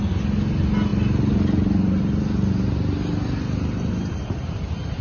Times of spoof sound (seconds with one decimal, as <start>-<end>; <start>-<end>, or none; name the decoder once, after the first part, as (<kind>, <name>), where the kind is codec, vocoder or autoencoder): none

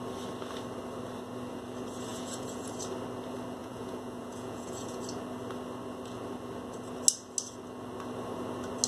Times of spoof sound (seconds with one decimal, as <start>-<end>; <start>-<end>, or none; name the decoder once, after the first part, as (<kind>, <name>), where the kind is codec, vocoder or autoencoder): 2.1-2.7 (vocoder, Vocos); 3.6-5.0